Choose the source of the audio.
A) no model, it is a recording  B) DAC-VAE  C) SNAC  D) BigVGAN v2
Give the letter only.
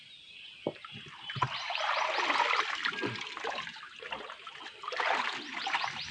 D